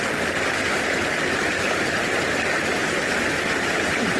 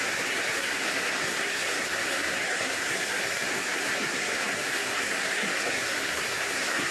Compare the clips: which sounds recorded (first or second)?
first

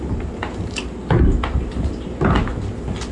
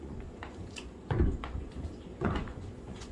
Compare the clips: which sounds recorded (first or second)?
first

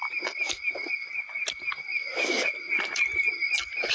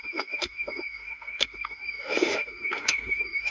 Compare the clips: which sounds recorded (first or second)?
first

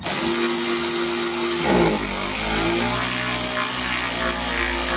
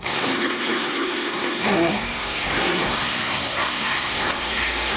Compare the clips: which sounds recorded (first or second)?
first